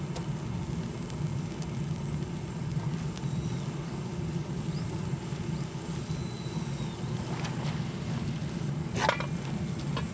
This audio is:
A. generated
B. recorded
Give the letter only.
B